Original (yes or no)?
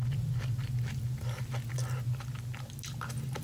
yes